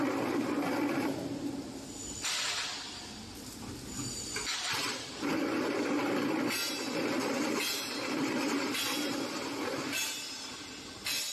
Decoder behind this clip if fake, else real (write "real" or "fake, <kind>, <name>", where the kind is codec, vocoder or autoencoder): real